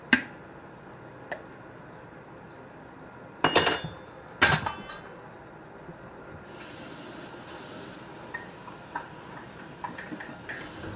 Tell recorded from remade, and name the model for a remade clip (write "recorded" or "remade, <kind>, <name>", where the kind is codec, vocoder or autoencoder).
recorded